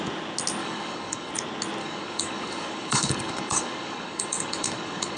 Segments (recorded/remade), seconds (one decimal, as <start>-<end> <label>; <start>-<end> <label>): 0.0-0.6 recorded; 0.6-1.3 remade; 1.3-1.8 recorded; 1.8-5.2 remade

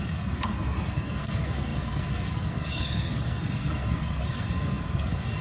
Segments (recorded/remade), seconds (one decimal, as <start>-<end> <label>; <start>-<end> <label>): 0.0-5.4 remade

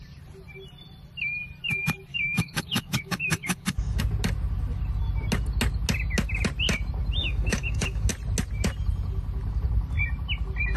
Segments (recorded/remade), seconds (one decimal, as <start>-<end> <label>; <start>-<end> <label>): 0.0-2.1 recorded; 2.1-4.0 remade; 4.0-7.2 recorded; 7.2-8.1 remade; 8.1-10.8 recorded

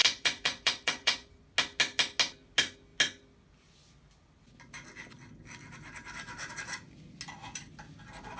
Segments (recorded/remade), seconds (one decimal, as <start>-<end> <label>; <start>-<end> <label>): 0.0-1.3 remade; 1.3-8.4 recorded

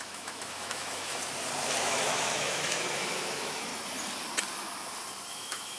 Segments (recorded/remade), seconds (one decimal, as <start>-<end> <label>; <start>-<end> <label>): 0.0-1.2 remade; 1.2-1.8 recorded; 1.8-3.7 remade; 3.7-5.3 recorded; 5.3-5.8 remade

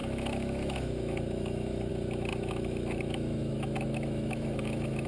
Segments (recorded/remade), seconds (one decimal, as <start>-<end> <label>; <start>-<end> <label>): 0.0-5.1 remade

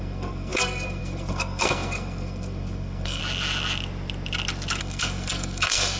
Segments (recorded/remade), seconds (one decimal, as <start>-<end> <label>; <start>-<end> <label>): 0.0-3.2 remade; 3.2-4.8 recorded; 4.8-6.0 remade

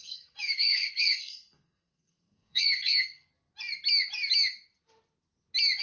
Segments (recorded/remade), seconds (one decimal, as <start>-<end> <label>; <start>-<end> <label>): 0.0-3.3 remade; 3.3-5.8 recorded